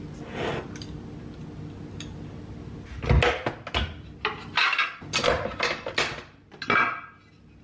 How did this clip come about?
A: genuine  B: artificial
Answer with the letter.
A